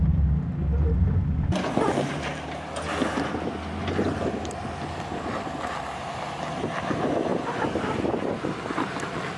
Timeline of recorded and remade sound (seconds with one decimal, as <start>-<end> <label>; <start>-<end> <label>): 0.0-9.4 recorded